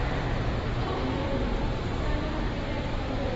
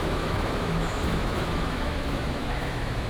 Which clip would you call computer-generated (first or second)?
second